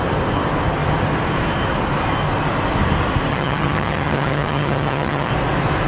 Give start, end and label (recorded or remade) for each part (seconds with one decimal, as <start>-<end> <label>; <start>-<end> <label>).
0.0-3.3 recorded; 3.3-5.3 remade; 5.3-5.9 recorded